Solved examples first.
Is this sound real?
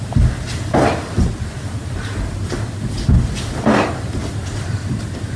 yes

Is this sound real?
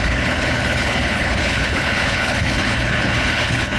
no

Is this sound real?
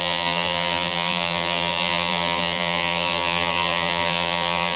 no